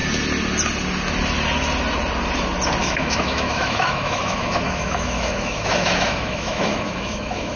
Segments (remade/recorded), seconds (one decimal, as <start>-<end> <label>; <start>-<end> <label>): 0.0-2.8 recorded; 2.8-7.6 remade